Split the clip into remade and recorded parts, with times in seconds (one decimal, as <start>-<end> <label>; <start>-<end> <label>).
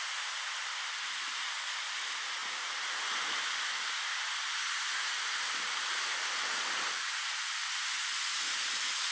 0.0-9.1 recorded